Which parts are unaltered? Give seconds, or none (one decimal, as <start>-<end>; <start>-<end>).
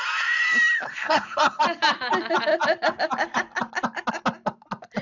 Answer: 0.0-0.9; 1.6-5.0